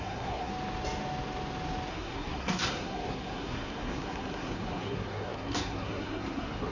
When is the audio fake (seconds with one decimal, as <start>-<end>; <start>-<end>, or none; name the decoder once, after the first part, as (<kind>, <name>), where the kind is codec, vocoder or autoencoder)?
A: 0.0-0.5 (codec, SNAC); 1.9-6.7